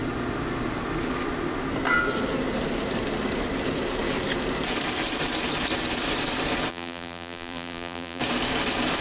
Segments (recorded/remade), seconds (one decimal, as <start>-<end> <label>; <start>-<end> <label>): 0.0-6.7 recorded; 6.7-8.2 remade; 8.2-9.0 recorded